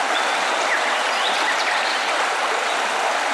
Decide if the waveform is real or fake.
real